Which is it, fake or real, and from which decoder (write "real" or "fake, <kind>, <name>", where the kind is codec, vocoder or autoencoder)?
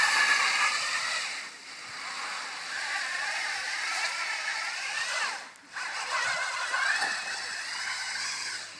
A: real